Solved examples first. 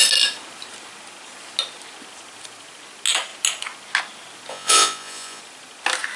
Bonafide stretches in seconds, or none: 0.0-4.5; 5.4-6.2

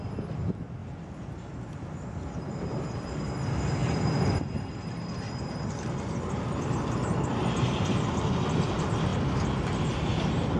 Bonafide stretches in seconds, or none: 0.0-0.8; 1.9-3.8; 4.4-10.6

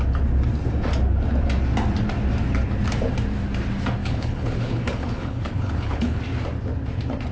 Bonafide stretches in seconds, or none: 0.0-4.0; 6.2-7.3

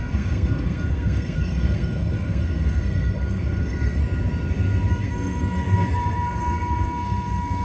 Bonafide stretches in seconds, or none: 4.0-4.9